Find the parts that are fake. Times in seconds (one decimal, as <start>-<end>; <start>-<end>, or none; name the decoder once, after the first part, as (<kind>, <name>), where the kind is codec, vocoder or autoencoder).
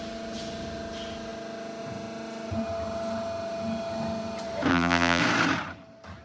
4.7-5.2 (vocoder, BigVGAN v2)